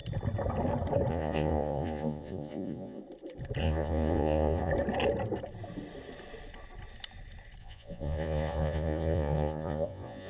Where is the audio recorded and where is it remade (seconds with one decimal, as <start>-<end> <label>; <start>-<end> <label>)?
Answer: 0.0-1.1 recorded; 1.1-3.0 remade; 3.0-3.6 recorded; 3.6-4.7 remade; 4.7-7.6 recorded; 7.6-10.3 remade